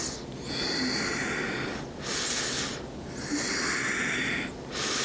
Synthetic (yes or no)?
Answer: no